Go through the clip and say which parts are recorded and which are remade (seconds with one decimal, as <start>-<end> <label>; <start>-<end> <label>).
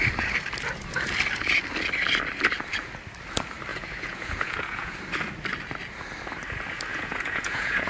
0.0-3.7 recorded; 3.7-4.9 remade; 4.9-6.9 recorded; 6.9-7.9 remade